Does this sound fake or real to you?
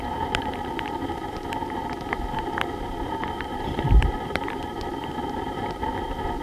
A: fake